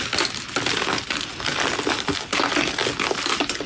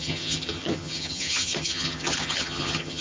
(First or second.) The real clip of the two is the first